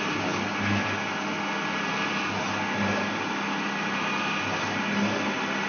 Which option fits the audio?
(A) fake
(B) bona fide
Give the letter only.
B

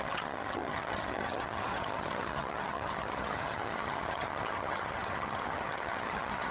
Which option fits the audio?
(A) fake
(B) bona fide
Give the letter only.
A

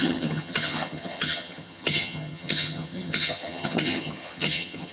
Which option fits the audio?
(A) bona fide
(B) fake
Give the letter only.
B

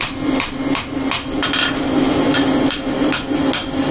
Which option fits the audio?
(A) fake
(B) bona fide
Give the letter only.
B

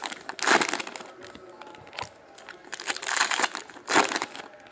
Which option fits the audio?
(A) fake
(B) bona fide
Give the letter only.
B